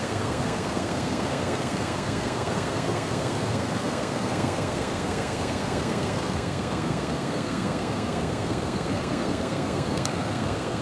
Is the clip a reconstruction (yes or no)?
yes